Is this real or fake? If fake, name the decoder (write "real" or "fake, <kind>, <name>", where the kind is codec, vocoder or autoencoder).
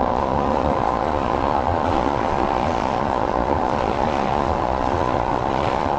fake, vocoder, Vocos